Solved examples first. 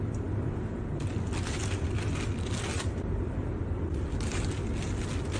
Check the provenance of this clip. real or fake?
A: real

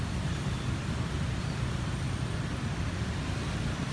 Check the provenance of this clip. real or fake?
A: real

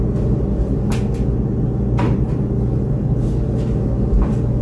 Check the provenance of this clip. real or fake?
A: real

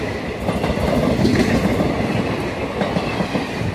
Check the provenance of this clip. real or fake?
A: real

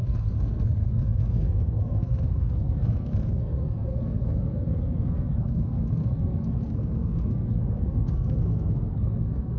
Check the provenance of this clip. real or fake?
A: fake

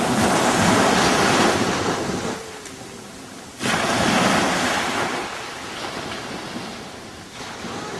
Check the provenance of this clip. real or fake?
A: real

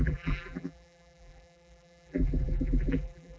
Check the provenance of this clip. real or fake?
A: fake